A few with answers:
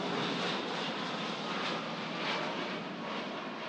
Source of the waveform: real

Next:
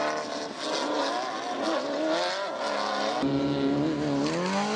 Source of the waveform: real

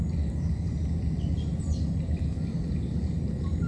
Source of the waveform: real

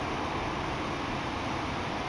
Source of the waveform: real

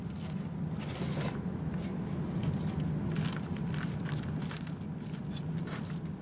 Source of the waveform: real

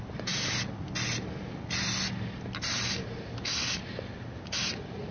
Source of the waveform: real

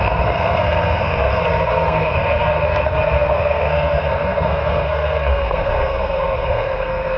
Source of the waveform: fake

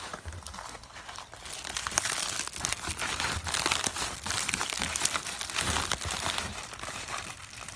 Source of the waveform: real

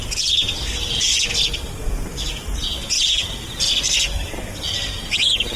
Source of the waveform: real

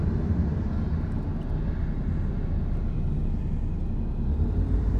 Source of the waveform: real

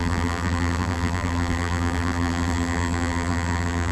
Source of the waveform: fake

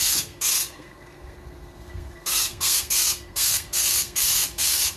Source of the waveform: fake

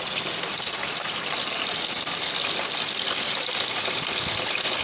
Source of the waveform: real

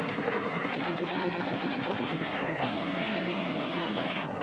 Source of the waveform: fake